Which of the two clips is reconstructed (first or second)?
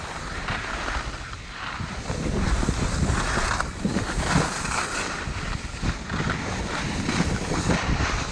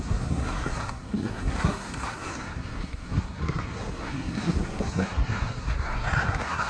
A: second